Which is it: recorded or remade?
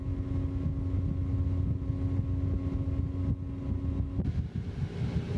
recorded